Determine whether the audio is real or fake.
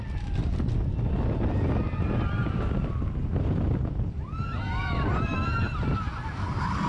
real